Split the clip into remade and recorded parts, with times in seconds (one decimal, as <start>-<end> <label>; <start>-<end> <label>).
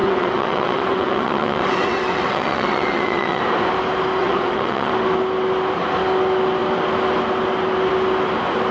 0.0-3.4 remade; 3.4-4.2 recorded; 4.2-4.9 remade; 4.9-8.7 recorded